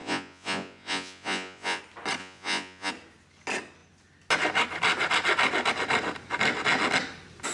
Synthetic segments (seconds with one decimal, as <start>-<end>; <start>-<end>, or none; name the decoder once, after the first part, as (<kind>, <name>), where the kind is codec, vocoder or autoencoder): 0.0-1.8 (vocoder, Vocos); 2.2-2.9